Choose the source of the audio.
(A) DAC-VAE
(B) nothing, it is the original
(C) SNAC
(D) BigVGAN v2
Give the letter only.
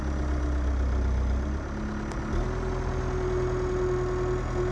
B